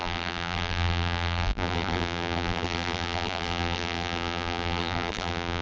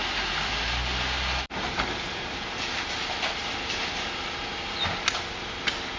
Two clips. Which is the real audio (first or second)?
second